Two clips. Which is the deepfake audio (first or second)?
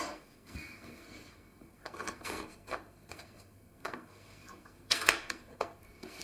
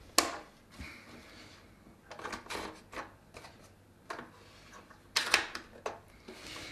first